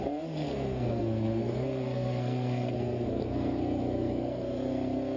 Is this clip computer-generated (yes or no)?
yes